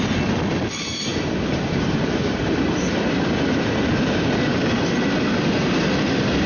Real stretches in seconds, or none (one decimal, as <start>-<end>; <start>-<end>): 0.0-1.1; 4.5-6.5